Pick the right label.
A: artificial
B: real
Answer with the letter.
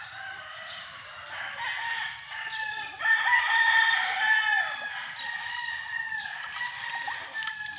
A